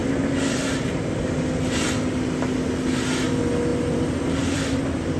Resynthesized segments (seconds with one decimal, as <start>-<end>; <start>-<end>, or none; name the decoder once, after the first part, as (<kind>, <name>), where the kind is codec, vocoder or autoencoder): 3.7-4.8 (vocoder, BigVGAN v2)